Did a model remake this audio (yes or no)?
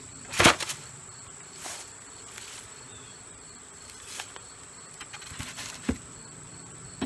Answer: no